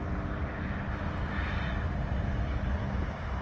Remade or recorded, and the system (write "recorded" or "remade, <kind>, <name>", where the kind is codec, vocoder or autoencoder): recorded